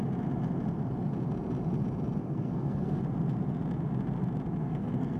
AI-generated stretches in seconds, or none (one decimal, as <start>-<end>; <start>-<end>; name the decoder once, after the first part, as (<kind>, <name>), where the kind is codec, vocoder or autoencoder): 2.2-3.0 (codec, SNAC); 4.6-5.2